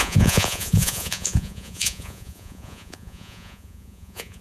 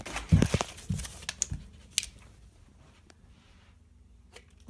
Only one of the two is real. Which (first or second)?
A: second